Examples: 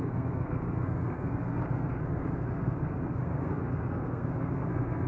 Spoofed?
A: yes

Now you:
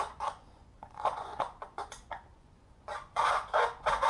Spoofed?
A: yes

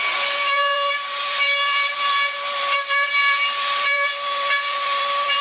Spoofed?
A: yes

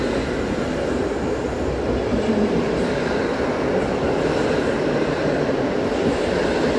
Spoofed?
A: no